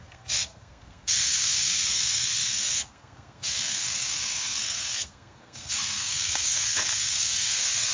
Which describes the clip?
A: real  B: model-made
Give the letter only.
B